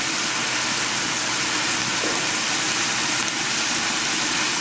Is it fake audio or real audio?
real